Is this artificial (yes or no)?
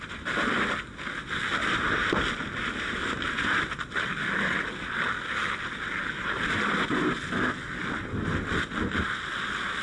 no